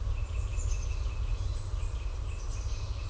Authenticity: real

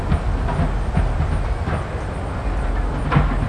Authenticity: real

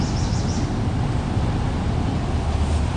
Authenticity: real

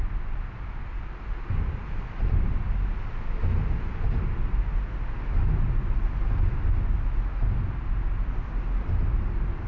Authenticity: real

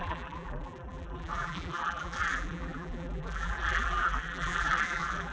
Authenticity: fake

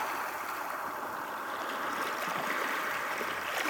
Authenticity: real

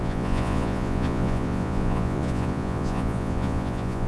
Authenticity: fake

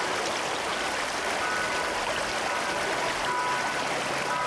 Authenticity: real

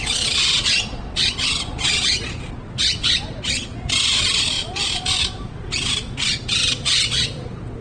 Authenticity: fake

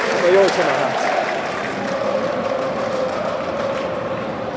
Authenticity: real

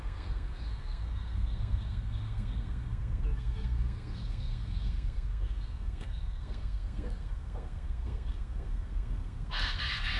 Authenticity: fake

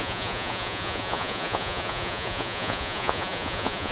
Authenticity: fake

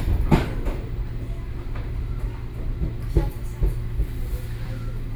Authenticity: real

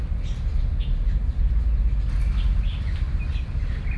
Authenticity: real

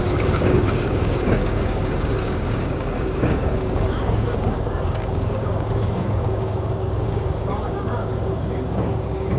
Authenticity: fake